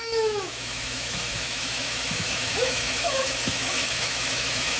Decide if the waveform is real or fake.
fake